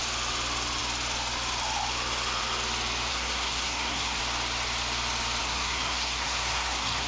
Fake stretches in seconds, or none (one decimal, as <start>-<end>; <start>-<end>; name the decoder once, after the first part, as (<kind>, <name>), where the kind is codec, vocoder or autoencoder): 3.1-4.2 (codec, SNAC); 5.4-7.1